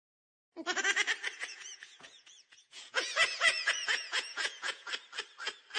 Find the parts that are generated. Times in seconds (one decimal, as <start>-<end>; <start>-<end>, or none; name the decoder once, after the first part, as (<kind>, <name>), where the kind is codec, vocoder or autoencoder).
1.4-4.9 (vocoder, Vocos)